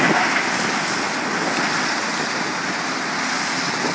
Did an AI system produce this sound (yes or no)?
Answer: no